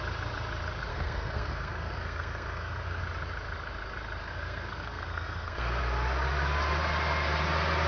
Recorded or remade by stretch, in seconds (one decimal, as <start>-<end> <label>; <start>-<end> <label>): 0.0-0.9 recorded; 0.9-3.0 remade; 3.0-4.2 recorded; 4.2-5.8 remade; 5.8-7.9 recorded